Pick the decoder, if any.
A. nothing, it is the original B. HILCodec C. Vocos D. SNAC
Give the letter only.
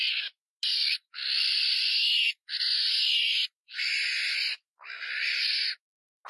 A